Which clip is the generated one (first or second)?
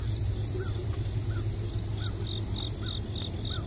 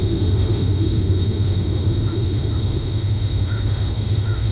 second